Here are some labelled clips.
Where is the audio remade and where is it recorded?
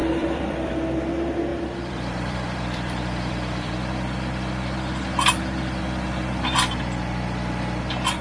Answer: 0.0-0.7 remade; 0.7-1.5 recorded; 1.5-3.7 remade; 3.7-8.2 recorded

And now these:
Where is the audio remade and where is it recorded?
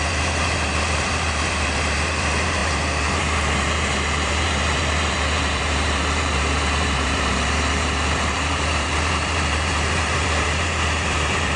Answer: 0.0-11.6 remade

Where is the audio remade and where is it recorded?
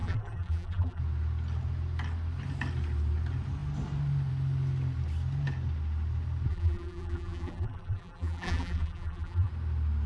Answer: 0.0-1.0 remade; 1.0-6.5 recorded; 6.5-9.5 remade; 9.5-10.1 recorded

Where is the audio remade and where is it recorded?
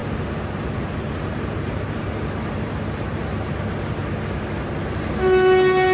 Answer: 0.0-3.5 remade; 3.5-5.9 recorded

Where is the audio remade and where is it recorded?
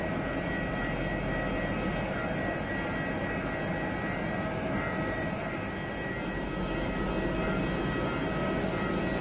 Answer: 0.0-9.2 recorded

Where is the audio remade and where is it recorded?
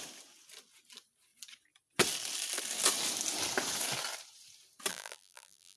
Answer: 0.0-4.9 recorded; 4.9-5.8 remade